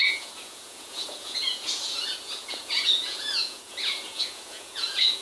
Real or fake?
fake